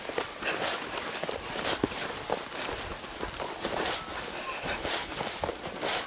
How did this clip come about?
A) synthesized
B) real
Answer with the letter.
B